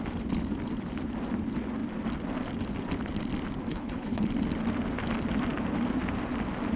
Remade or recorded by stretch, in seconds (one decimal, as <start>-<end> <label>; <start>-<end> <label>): 0.0-3.7 recorded; 3.7-4.3 remade; 4.3-6.8 recorded